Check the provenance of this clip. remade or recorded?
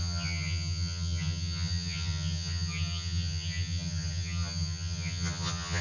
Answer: remade